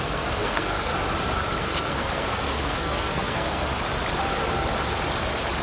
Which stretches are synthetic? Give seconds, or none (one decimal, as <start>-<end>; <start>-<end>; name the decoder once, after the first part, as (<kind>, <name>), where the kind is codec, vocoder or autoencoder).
0.0-0.9 (codec, SNAC); 1.6-3.7